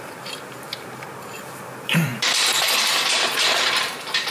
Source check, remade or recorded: remade